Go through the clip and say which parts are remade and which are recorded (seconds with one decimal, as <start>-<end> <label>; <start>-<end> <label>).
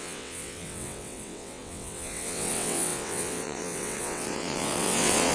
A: 0.0-5.3 remade